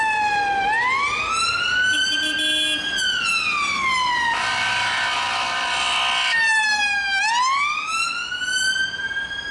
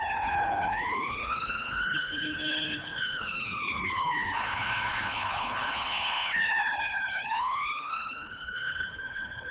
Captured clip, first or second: first